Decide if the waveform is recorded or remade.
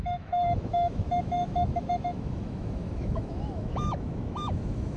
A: remade